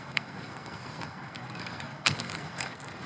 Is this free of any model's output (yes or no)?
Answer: no